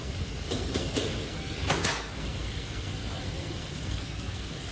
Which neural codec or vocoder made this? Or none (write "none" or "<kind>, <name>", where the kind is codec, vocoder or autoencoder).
codec, SNAC